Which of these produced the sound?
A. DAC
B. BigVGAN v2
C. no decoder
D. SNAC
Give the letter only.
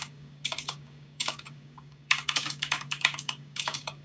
A